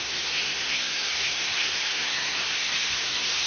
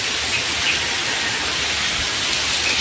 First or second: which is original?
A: second